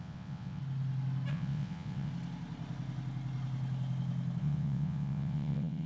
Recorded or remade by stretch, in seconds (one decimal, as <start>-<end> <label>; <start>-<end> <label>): 0.0-0.6 remade; 0.6-1.3 recorded; 1.3-2.1 remade; 2.1-4.4 recorded; 4.4-5.9 remade